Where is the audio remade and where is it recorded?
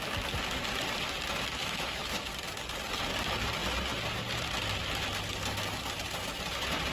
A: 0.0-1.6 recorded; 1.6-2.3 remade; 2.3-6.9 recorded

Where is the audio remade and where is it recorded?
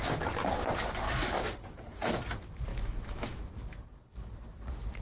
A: 0.0-2.7 recorded; 2.7-3.5 remade; 3.5-5.0 recorded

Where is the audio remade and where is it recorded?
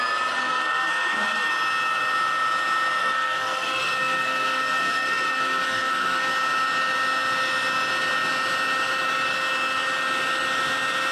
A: 0.0-0.4 recorded; 0.4-1.5 remade; 1.5-3.0 recorded; 3.0-6.3 remade; 6.3-11.1 recorded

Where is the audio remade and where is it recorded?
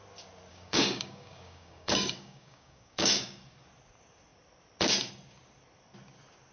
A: 0.0-0.5 recorded; 0.5-3.4 remade; 3.4-6.5 recorded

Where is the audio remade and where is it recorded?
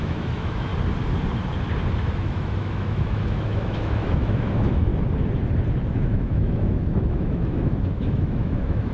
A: 0.0-0.7 remade; 0.7-2.0 recorded; 2.0-4.9 remade; 4.9-5.9 recorded; 5.9-8.9 remade